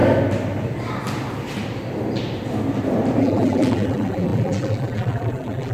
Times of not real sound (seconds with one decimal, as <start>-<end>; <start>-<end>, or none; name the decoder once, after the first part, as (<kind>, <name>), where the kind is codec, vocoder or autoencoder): 3.2-5.7 (vocoder, BigVGAN v2)